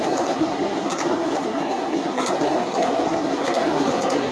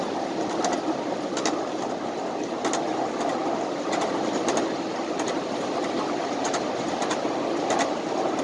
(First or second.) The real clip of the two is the second